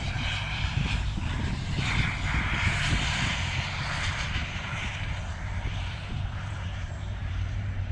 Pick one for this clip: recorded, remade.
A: remade